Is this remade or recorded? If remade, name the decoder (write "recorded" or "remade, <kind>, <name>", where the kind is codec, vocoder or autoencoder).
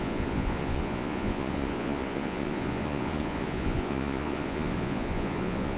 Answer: remade, vocoder, Vocos